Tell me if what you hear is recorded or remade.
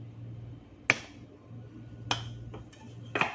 recorded